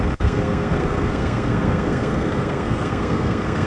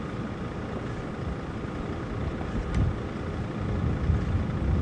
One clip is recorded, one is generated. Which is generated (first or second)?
first